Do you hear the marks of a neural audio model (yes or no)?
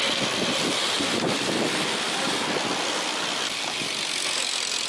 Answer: no